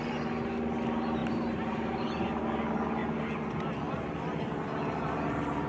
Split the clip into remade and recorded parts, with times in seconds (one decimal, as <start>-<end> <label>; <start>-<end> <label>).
0.0-1.2 recorded; 1.2-2.4 remade; 2.4-5.7 recorded